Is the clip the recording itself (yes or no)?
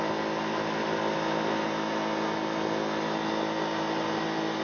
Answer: yes